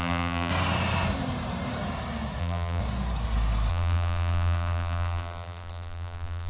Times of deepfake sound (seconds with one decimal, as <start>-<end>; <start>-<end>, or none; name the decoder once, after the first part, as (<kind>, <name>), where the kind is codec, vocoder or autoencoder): 0.0-0.5 (vocoder, BigVGAN v2); 2.4-2.8; 3.7-6.5